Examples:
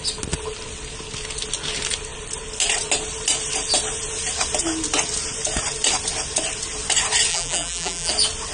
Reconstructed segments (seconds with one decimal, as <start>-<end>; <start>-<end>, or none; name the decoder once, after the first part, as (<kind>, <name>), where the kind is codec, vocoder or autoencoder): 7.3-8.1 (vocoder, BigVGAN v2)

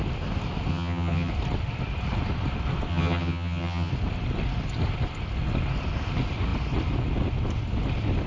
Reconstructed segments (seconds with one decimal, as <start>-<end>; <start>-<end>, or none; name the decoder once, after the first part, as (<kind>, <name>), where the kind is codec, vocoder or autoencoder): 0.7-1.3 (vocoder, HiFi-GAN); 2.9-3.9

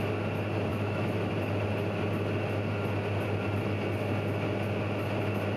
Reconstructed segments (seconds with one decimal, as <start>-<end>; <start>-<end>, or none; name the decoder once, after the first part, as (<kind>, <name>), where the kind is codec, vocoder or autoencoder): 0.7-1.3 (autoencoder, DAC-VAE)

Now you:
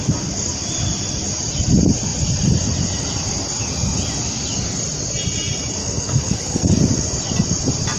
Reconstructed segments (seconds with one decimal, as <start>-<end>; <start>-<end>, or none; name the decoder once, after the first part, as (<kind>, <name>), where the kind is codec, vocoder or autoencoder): 5.8-6.7 (codec, SNAC)

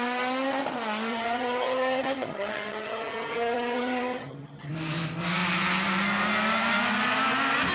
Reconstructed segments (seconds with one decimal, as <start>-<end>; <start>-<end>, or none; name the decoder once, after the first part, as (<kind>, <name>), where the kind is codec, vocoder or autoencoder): 1.1-4.7 (vocoder, HiFi-GAN)

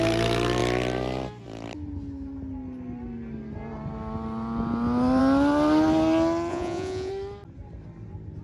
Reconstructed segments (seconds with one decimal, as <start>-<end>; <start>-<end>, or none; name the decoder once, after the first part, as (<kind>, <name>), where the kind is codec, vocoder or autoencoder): 6.5-7.1 (vocoder, Vocos)